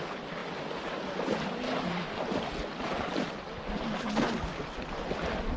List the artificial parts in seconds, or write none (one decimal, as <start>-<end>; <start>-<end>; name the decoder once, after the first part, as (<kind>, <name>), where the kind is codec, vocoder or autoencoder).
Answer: none